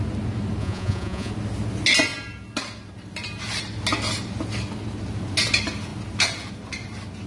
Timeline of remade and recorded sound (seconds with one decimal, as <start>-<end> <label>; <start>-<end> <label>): 0.0-0.6 recorded; 0.6-1.3 remade; 1.3-7.3 recorded